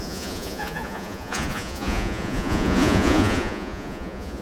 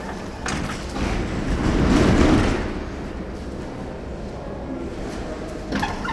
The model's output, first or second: first